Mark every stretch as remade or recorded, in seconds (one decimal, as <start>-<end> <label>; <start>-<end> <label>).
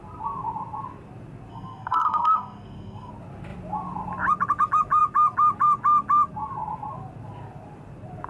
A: 0.0-1.5 recorded; 1.5-3.1 remade; 3.1-8.3 recorded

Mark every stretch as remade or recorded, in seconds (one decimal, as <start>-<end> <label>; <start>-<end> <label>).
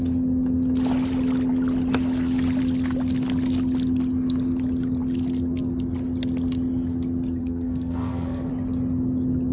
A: 0.0-7.4 recorded; 7.4-8.5 remade; 8.5-9.5 recorded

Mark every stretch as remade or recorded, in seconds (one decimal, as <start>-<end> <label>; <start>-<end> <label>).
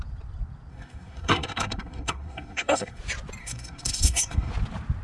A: 0.0-0.7 recorded; 0.7-3.0 remade; 3.0-3.4 recorded; 3.4-4.5 remade; 4.5-5.0 recorded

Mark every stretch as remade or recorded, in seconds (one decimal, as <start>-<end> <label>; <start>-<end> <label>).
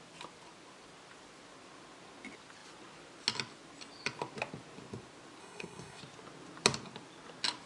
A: 0.0-5.4 recorded; 5.4-6.0 remade; 6.0-7.7 recorded